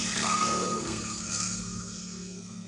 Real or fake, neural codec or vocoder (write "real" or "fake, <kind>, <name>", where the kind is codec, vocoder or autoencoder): fake, codec, SNAC